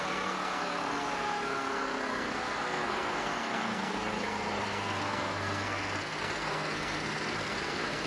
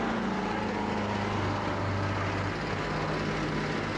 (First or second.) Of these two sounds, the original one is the second